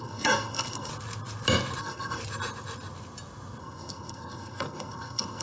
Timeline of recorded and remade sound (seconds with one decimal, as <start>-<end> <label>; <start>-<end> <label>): 0.0-0.9 remade; 0.9-1.8 recorded; 1.8-2.2 remade; 2.2-3.6 recorded; 3.6-5.4 remade